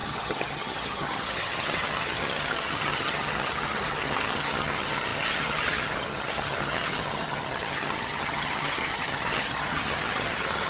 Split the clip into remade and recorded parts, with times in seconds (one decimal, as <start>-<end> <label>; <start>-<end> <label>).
0.0-10.7 remade